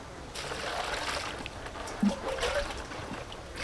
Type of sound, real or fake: real